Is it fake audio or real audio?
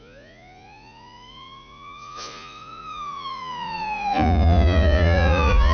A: fake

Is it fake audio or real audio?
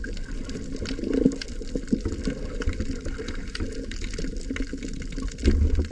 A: real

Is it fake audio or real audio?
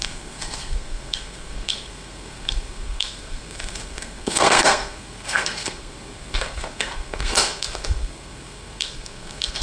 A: fake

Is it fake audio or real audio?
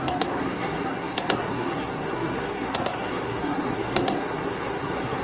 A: fake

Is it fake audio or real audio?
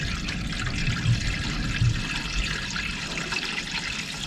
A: real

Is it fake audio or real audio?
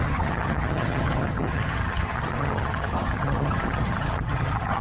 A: fake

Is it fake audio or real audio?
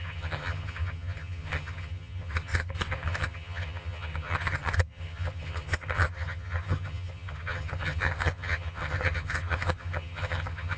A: fake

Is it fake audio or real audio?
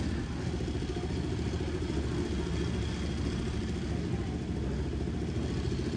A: real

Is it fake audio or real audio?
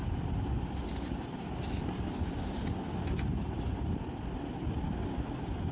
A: real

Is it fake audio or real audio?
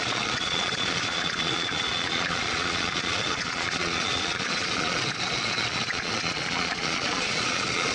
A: fake